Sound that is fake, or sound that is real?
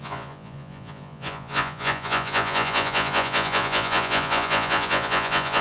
fake